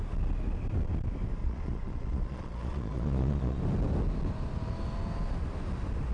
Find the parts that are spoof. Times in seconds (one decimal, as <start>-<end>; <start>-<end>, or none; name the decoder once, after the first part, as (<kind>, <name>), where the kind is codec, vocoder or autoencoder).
1.4-3.6 (vocoder, Vocos)